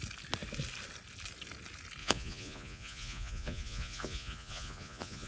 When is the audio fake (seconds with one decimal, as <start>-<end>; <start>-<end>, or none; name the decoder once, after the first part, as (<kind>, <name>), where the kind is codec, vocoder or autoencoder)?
2.0-5.3 (vocoder, Vocos)

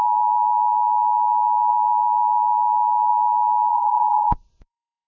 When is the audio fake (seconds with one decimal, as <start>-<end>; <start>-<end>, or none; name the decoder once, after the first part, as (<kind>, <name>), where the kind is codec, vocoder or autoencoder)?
3.7-5.1 (vocoder, Vocos)

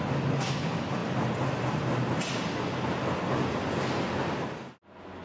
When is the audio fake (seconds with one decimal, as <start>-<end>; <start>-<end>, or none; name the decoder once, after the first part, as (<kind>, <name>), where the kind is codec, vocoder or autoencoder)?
none

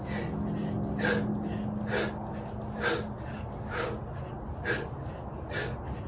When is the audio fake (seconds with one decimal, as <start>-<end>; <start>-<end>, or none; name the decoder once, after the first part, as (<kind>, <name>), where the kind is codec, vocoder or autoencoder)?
none

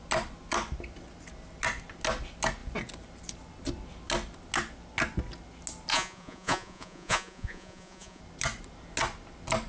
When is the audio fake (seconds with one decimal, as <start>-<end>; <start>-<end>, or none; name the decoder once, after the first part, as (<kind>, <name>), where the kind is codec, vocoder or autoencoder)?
5.9-8.2 (vocoder, Vocos)